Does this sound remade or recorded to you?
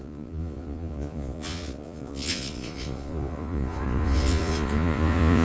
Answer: remade